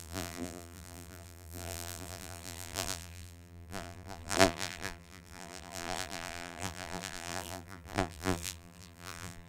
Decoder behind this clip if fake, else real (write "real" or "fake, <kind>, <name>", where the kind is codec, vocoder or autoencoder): fake, vocoder, BigVGAN v2